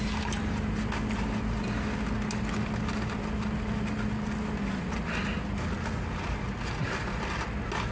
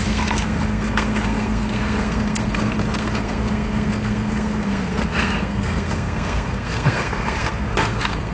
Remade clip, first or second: second